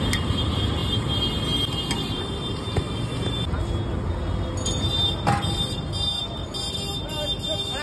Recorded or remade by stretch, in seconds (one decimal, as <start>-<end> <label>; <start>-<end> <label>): 0.0-7.8 recorded

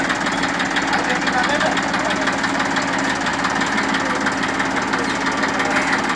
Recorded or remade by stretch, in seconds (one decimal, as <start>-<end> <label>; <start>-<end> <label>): 0.0-6.2 recorded

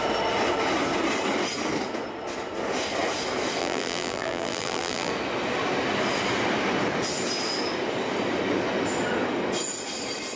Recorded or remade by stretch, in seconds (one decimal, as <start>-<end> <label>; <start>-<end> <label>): 0.0-3.6 recorded; 3.6-5.1 remade; 5.1-10.4 recorded